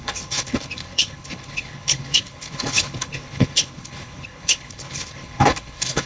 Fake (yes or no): yes